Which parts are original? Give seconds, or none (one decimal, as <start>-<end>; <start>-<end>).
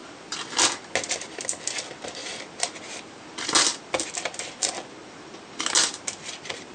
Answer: 0.0-6.7